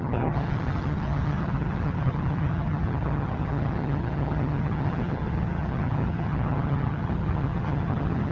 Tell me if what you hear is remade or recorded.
remade